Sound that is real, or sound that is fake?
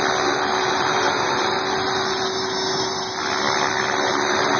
real